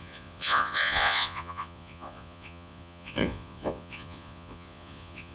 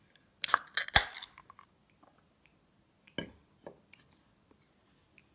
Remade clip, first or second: first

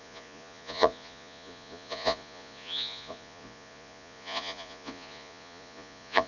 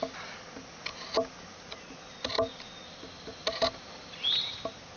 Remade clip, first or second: first